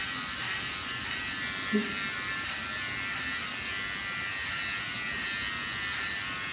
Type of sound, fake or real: real